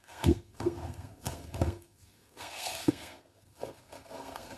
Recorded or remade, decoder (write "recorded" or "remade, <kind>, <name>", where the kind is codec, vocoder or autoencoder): remade, codec, SNAC